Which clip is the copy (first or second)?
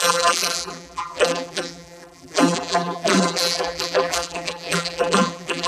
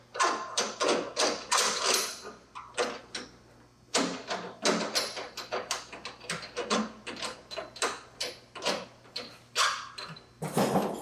first